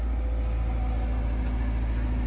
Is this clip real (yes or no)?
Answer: yes